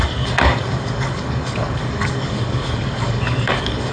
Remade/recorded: remade